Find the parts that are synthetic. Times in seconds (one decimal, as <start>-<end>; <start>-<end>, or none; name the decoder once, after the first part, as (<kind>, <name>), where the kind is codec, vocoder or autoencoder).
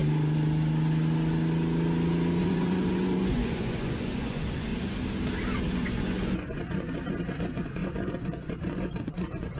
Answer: 2.4-4.7 (vocoder, Vocos); 5.7-9.6